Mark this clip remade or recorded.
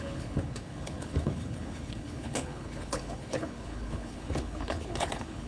remade